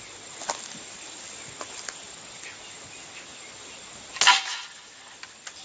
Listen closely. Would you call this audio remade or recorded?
recorded